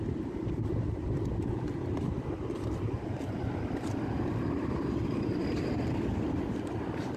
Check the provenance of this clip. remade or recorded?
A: remade